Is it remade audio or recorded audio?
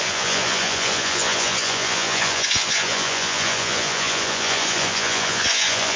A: remade